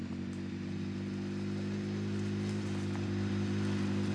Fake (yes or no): no